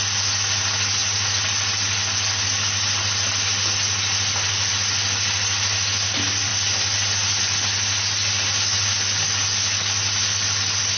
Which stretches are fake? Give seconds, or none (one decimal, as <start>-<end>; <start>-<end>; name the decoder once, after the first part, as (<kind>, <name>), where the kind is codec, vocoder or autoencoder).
none